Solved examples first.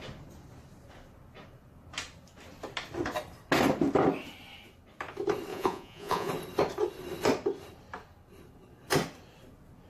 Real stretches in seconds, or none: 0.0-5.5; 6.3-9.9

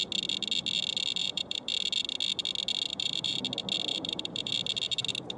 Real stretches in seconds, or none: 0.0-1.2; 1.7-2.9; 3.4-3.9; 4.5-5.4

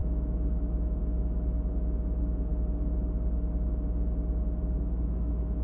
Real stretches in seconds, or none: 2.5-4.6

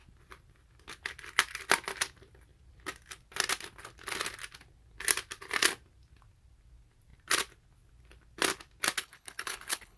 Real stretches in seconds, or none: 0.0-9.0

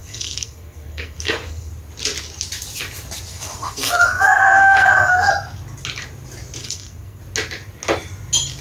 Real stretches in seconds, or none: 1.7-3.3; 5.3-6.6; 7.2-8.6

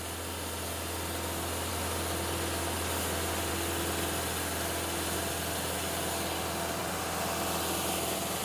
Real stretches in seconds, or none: 0.0-8.4

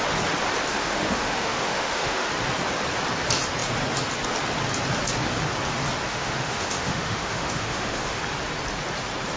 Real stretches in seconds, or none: 0.0-0.7; 2.3-6.1; 8.2-9.4